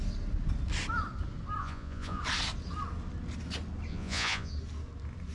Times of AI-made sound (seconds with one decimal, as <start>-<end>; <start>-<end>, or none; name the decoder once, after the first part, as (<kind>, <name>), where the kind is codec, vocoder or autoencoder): 1.6-2.2 (vocoder, Vocos); 3.9-4.5